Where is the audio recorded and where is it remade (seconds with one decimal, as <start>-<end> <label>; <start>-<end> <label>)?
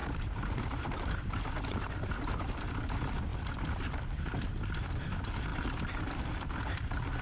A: 0.0-2.6 remade; 2.6-7.2 recorded